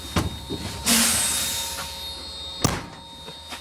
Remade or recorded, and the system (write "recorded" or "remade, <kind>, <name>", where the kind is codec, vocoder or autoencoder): recorded